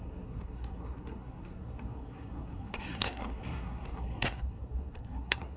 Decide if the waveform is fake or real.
fake